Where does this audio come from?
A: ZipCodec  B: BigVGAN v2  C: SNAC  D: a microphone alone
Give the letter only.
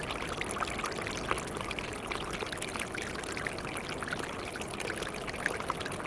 D